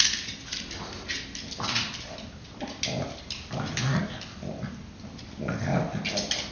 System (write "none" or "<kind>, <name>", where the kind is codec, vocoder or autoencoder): none